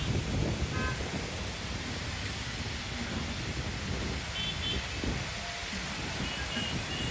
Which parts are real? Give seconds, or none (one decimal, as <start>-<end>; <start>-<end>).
0.0-7.1

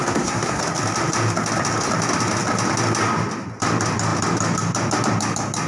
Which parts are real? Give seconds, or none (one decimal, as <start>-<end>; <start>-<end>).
0.6-5.7

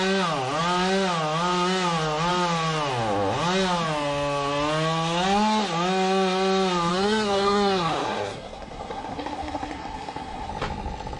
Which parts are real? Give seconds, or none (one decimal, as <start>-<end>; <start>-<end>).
0.0-6.9; 10.5-11.2

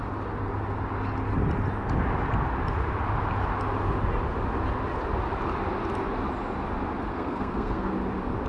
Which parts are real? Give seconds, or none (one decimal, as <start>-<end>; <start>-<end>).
0.0-7.1; 7.9-8.5

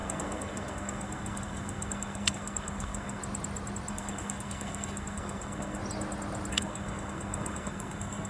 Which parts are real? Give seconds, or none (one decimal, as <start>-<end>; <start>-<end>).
3.2-3.9; 5.8-6.5

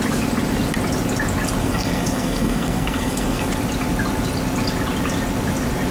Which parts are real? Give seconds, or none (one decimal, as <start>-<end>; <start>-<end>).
0.0-1.6; 3.5-5.9

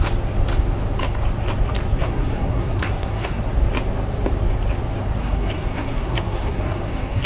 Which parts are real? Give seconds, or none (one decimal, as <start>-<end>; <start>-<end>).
0.0-2.0; 3.4-5.2